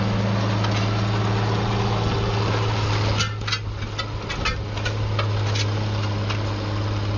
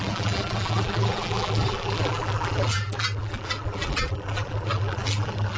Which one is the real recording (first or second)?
first